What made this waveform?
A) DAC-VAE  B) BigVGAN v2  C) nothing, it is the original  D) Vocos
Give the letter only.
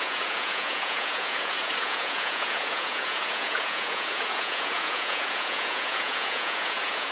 D